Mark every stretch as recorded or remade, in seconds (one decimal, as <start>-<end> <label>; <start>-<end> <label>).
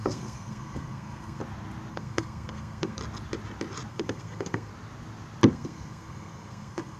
0.0-1.4 remade; 1.4-1.9 recorded; 1.9-3.0 remade; 3.0-3.9 recorded; 3.9-4.7 remade; 4.7-5.5 recorded; 5.5-7.0 remade